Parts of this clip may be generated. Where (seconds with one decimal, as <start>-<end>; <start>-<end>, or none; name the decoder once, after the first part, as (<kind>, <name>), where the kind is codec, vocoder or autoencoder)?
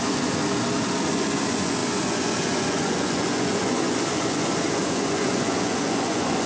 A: 0.0-0.4 (vocoder, Vocos); 1.1-6.5